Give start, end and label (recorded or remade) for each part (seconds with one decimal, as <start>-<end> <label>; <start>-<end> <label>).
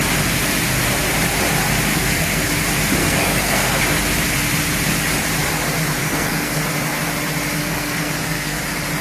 0.0-1.9 recorded; 1.9-2.5 remade; 2.5-3.0 recorded; 3.0-3.8 remade; 3.8-6.0 recorded; 6.0-6.6 remade; 6.6-7.6 recorded; 7.6-8.6 remade; 8.6-9.0 recorded